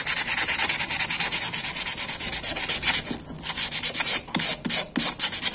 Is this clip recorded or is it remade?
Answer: recorded